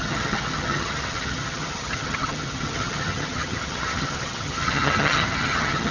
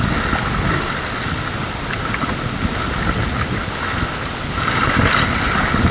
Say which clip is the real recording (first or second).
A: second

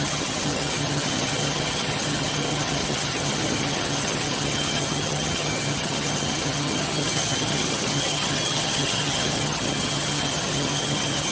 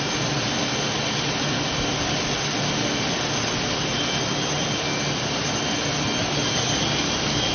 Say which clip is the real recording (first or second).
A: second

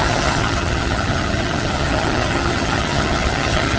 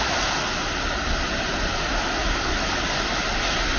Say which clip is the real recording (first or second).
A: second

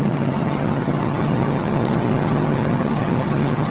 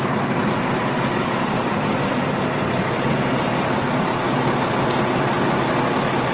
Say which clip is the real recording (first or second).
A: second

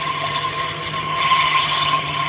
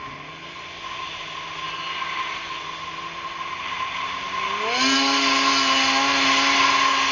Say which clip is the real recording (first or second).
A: second